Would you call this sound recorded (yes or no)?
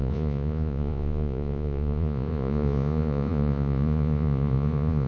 no